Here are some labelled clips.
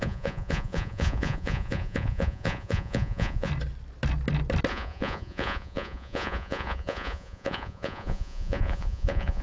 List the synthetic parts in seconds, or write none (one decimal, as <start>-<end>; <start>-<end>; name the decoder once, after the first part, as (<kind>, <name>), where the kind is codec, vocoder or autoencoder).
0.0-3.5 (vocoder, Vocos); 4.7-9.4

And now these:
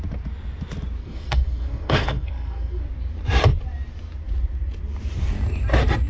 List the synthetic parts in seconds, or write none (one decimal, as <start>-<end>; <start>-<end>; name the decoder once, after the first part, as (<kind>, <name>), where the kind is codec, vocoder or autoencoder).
1.0-2.8 (codec, SNAC)

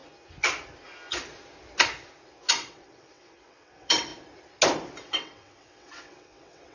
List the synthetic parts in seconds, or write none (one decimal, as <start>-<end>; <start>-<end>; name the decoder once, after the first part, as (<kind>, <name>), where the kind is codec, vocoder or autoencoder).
2.5-4.1 (vocoder, WaveNeXt); 5.0-6.7

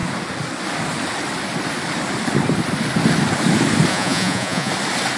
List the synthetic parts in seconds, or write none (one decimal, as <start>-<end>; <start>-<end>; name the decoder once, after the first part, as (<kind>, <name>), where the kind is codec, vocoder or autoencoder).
3.9-4.7 (vocoder, Vocos)

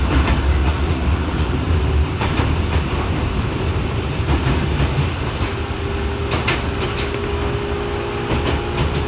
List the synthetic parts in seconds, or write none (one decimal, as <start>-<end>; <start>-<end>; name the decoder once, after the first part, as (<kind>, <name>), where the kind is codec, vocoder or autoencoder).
0.6-1.5 (vocoder, Vocos)